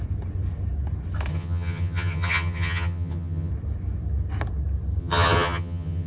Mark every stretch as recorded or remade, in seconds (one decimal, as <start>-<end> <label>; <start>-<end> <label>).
0.0-1.3 recorded; 1.3-3.5 remade; 3.5-5.0 recorded; 5.0-6.1 remade